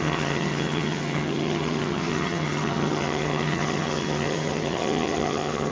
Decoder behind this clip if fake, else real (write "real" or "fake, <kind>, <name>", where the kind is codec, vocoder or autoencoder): fake, vocoder, HiFi-GAN